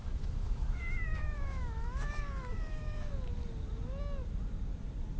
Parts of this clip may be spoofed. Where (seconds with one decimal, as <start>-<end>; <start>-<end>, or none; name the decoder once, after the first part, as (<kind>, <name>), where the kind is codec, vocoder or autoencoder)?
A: 0.0-3.1 (autoencoder, DAC-VAE)